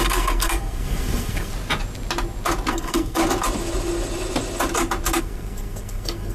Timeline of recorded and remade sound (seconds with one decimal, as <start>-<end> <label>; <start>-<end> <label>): 0.0-1.5 remade; 1.5-2.7 recorded; 2.7-3.2 remade; 3.2-5.2 recorded; 5.2-6.3 remade